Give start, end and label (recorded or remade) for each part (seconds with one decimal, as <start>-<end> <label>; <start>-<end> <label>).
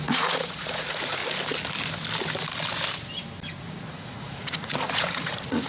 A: 0.0-1.2 remade; 1.2-3.6 recorded; 3.6-5.7 remade